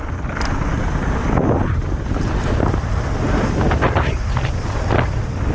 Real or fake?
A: fake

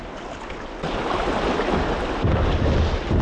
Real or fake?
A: real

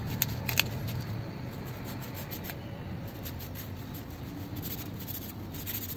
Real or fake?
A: real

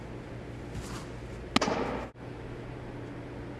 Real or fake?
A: real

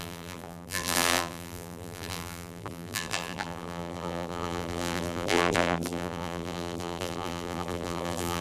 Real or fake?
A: fake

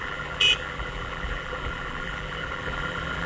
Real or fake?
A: fake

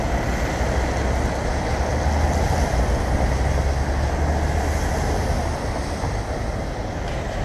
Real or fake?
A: real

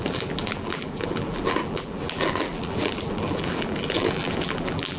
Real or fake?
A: fake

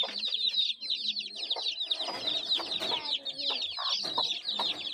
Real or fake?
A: real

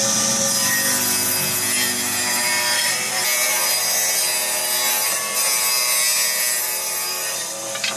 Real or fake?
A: real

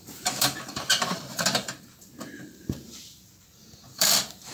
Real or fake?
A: fake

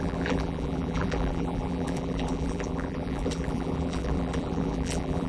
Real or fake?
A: fake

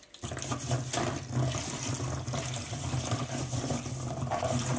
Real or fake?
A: real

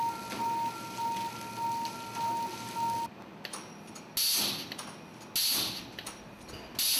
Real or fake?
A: real